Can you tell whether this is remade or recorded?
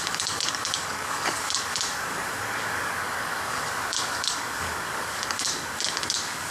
remade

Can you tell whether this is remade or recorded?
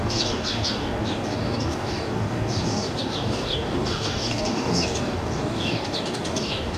remade